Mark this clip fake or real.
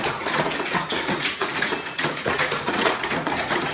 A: fake